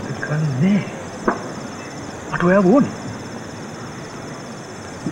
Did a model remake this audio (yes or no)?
no